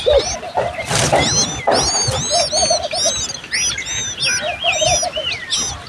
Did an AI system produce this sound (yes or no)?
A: no